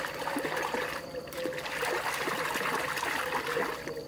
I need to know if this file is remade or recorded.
recorded